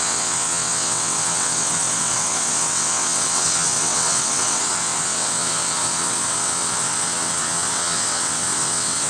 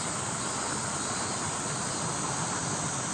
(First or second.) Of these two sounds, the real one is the second